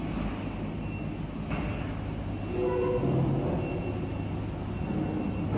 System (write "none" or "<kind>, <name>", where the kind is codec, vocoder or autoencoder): none